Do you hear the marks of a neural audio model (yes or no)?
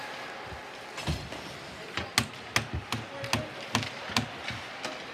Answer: no